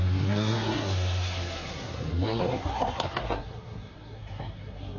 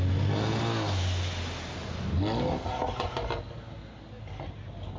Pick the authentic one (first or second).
second